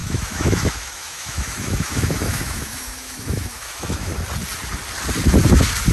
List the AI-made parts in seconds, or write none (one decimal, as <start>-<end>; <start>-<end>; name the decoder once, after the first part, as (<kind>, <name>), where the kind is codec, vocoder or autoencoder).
0.0-4.1 (autoencoder, DAC-VAE)

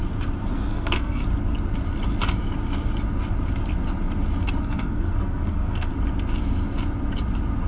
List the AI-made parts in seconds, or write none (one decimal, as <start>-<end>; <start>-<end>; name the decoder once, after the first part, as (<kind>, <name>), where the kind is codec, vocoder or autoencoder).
0.5-1.2 (codec, SNAC); 4.6-5.9

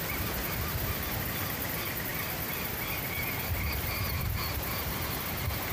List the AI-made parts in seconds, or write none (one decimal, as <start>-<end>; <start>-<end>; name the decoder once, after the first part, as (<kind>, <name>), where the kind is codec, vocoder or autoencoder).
none

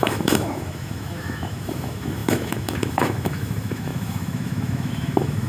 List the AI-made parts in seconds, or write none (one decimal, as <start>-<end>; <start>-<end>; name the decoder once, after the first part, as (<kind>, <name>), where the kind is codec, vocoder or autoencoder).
0.0-5.5 (autoencoder, DAC-VAE)

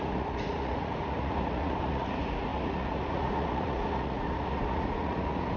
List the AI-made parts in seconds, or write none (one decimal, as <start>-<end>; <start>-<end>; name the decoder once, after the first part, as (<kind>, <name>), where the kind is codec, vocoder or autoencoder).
0.0-5.6 (vocoder, Vocos)